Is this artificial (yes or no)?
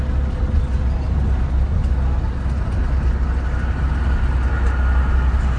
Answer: no